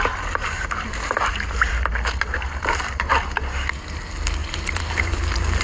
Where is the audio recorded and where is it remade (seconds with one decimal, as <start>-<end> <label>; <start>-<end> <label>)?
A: 0.0-1.3 recorded; 1.3-1.9 remade; 1.9-4.4 recorded; 4.4-5.6 remade